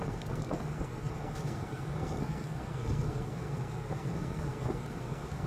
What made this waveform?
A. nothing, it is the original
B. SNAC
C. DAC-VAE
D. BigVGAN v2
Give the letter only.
B